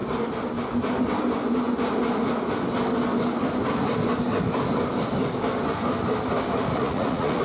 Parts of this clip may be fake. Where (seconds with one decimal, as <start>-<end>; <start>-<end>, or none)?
6.7-7.4